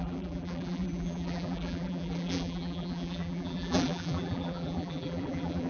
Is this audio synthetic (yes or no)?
yes